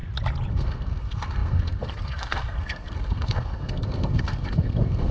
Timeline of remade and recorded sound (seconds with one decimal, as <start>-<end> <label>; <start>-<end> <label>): 0.0-0.5 recorded; 0.5-5.1 remade